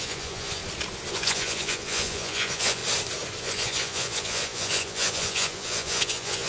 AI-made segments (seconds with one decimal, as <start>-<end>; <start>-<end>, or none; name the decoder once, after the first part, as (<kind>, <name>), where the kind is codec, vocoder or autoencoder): 0.0-0.6 (vocoder, Vocos); 1.1-2.8; 3.4-6.5